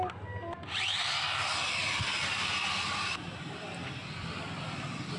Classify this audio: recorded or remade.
recorded